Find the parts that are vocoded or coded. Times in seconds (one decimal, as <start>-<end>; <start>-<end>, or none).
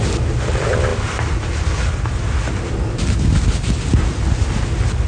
none